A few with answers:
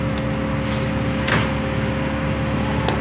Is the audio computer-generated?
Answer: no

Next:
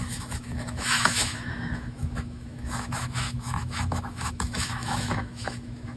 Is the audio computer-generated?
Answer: yes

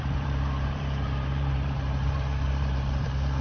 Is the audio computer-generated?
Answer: yes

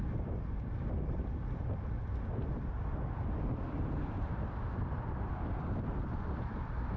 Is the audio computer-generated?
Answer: yes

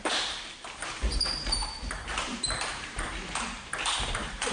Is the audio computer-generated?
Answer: yes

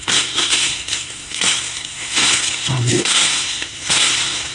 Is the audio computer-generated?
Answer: yes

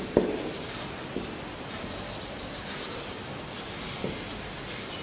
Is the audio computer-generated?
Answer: no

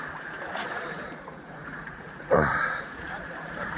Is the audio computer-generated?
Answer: yes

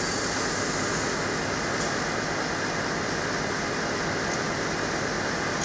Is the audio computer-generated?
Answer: no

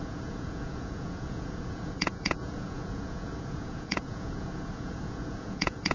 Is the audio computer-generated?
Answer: yes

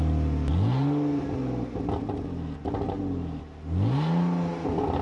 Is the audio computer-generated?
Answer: no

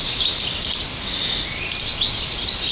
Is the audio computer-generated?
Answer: no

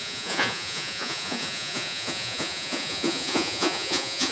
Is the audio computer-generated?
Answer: yes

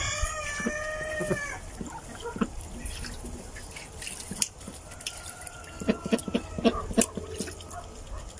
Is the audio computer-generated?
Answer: no